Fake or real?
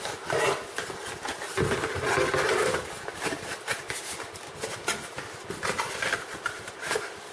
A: real